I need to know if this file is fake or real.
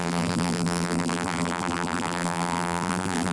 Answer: fake